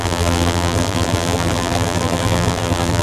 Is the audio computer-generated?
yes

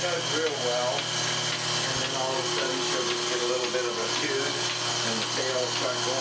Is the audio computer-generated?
no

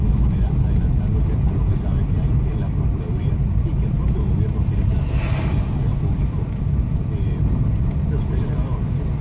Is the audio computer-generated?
no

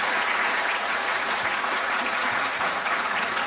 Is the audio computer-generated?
yes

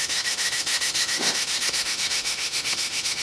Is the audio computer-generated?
yes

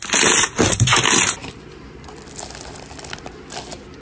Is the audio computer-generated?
no